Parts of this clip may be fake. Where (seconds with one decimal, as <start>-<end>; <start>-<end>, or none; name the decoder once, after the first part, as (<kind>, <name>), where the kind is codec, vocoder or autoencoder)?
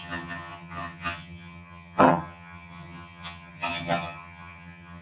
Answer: 0.0-5.0 (vocoder, HiFi-GAN)